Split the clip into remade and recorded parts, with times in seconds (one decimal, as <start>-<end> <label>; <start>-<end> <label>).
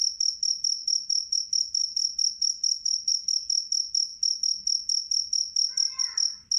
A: 0.0-0.8 recorded; 0.8-1.4 remade; 1.4-1.8 recorded; 1.8-3.1 remade; 3.1-6.6 recorded